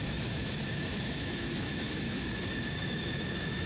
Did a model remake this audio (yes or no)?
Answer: yes